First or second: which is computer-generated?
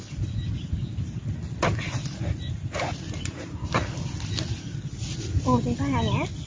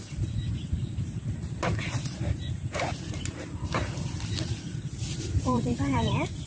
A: second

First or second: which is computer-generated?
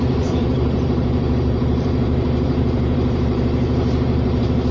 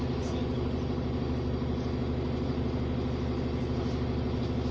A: first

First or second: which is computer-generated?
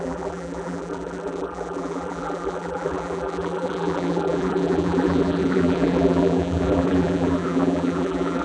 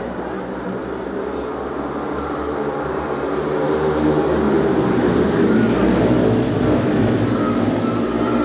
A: first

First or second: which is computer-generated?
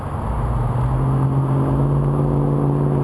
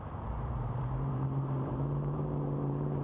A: second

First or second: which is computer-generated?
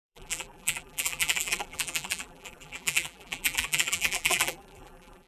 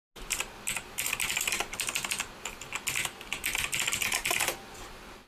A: first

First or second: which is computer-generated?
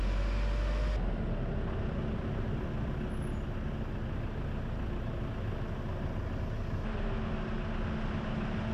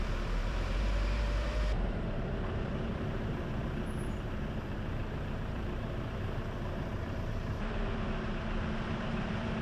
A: second